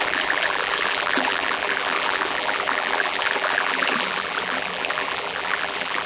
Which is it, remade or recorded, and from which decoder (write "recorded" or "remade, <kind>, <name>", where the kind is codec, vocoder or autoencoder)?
remade, vocoder, BigVGAN v2